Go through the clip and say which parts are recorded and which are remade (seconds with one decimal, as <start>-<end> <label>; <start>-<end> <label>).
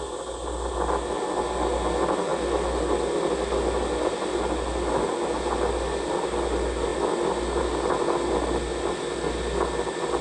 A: 0.0-10.2 recorded